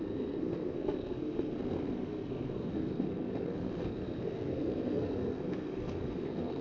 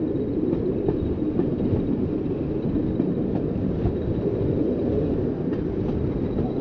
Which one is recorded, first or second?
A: second